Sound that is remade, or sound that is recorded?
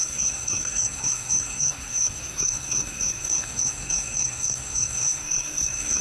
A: remade